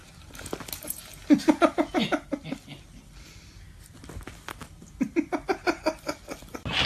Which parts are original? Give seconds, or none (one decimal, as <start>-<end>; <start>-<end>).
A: 0.0-6.9